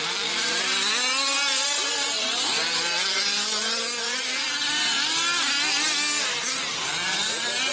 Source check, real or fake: real